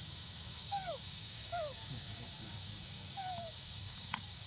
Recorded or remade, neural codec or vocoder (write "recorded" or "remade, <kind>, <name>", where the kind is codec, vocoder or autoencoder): remade, codec, DAC